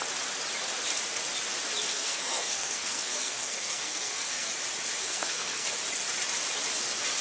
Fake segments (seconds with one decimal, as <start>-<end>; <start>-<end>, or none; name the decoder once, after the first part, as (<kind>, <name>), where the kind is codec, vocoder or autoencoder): 1.9-4.5 (codec, SNAC); 5.0-5.7